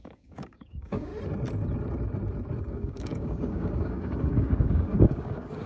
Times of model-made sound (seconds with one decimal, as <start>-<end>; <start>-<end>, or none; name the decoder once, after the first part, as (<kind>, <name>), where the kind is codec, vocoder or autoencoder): 0.0-1.1 (codec, DAC); 2.6-5.7